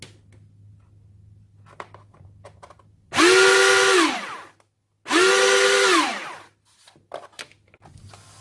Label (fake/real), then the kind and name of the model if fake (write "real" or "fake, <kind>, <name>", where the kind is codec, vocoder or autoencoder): real